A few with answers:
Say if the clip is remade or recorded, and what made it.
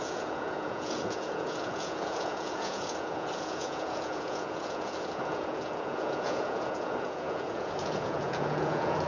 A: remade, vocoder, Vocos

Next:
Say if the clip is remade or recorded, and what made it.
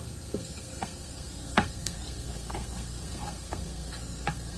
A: remade, codec, SNAC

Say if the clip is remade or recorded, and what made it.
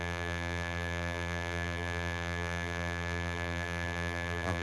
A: remade, vocoder, BigVGAN v2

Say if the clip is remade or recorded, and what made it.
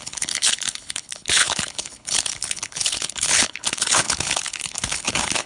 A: remade, codec, HILCodec